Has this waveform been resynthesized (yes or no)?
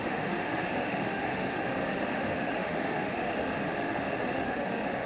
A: yes